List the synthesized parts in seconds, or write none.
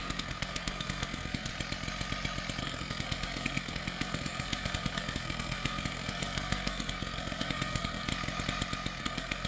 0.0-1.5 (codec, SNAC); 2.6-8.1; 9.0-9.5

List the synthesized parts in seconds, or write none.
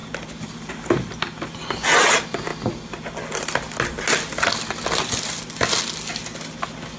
none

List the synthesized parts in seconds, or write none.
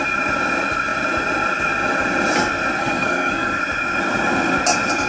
2.8-3.6 (codec, SNAC)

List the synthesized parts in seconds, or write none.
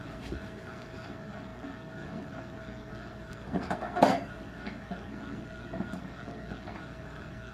0.0-7.5 (codec, SNAC)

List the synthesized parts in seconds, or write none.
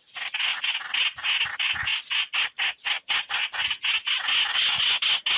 none